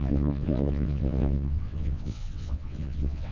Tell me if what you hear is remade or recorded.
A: remade